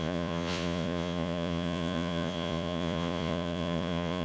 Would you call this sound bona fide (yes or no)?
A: no